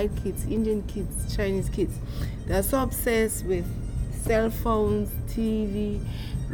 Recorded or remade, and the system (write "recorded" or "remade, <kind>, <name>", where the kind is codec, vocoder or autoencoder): recorded